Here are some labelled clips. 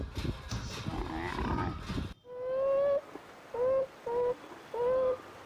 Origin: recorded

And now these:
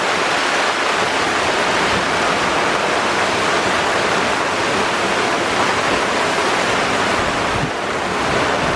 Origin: recorded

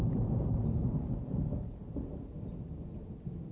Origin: recorded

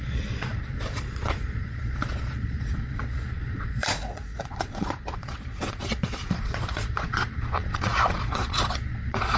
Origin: remade